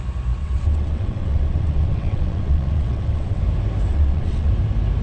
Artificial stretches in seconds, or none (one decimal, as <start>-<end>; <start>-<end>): 0.4-3.4; 3.9-4.5